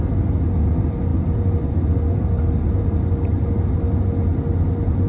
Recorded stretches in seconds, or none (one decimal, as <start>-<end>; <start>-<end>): 0.0-5.1